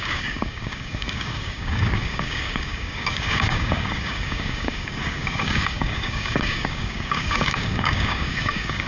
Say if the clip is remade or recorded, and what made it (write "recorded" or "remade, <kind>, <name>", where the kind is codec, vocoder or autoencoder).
remade, codec, DAC